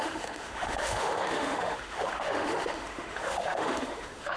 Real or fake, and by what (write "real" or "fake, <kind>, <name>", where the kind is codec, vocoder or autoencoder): fake, autoencoder, DAC-VAE